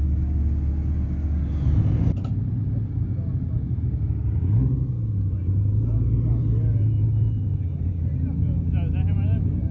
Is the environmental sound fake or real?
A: real